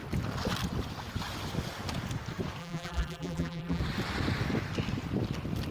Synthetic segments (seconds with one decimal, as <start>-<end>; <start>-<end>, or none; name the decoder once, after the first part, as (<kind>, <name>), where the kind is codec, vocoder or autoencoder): 2.6-3.8 (vocoder, BigVGAN v2)